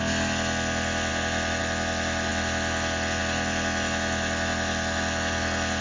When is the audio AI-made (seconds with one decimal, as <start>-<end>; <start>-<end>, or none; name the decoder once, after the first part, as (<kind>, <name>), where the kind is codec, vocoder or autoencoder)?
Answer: none